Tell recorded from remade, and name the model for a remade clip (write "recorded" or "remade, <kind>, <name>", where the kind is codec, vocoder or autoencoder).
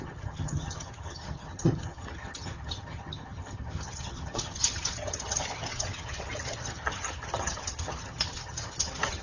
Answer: remade, vocoder, HiFi-GAN